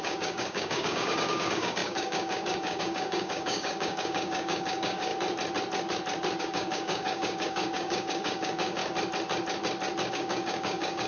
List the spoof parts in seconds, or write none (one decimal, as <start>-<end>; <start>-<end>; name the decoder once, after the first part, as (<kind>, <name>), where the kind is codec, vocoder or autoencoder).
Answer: 0.0-5.1 (codec, DAC); 6.4-8.8; 10.1-11.1

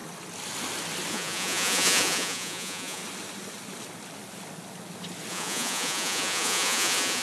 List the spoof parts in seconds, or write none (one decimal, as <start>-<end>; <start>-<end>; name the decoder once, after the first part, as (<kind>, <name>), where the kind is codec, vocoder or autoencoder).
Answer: 1.1-3.0 (vocoder, Vocos); 5.3-7.2